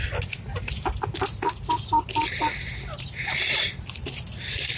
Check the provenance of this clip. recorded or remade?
recorded